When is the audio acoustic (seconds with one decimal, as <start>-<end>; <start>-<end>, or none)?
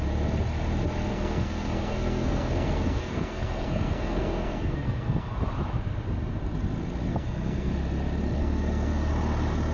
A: 0.0-1.1; 5.4-7.1; 7.7-8.4; 9.1-9.7